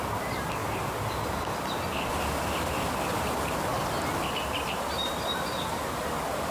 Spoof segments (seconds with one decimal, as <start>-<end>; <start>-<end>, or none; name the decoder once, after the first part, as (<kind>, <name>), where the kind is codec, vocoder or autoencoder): none